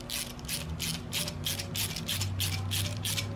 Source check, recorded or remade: recorded